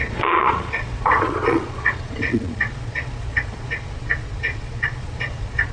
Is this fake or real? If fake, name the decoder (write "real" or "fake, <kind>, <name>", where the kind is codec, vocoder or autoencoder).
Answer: fake, vocoder, Vocos